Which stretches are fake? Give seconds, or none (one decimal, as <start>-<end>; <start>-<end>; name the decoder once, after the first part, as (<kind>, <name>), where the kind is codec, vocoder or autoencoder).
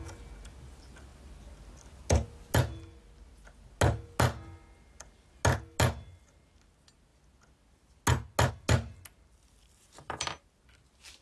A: none